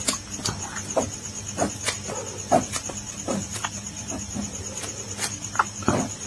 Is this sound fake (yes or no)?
no